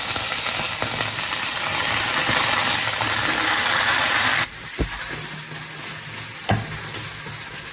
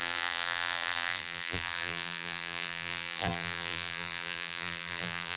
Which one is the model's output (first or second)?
second